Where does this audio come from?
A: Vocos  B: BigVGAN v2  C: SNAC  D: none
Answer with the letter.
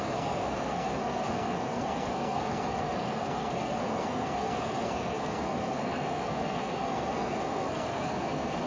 C